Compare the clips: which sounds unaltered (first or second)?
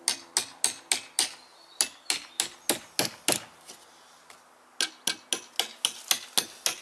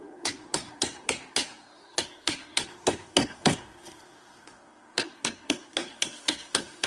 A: first